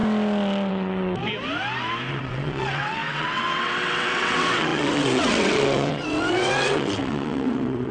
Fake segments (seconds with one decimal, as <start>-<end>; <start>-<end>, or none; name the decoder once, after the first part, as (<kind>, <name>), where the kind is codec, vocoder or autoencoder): 0.7-1.2 (vocoder, WaveNeXt); 2.1-7.9